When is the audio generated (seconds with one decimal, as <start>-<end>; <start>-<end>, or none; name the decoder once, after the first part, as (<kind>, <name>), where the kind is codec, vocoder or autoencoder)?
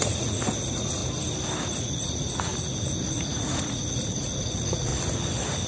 0.0-1.0 (vocoder, Vocos); 1.6-2.5; 3.1-4.9